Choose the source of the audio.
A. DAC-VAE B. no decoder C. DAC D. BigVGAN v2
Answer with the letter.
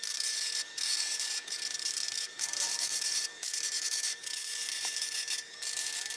C